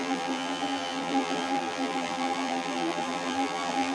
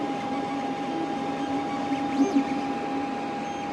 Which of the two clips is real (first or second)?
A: second